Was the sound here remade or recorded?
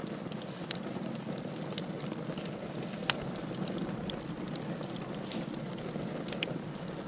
recorded